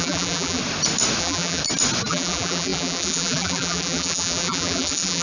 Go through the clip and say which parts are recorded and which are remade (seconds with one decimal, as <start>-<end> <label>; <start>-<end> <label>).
0.0-0.6 remade; 0.6-1.2 recorded; 1.2-1.6 remade; 1.6-2.1 recorded; 2.1-5.2 remade